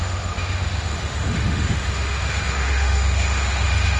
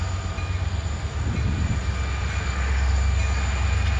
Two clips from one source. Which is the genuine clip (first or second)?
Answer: second